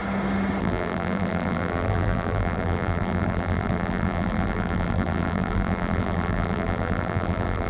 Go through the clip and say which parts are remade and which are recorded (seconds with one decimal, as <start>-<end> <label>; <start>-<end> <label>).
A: 0.0-0.6 recorded; 0.6-7.7 remade